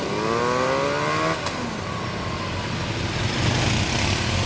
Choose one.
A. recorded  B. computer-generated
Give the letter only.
A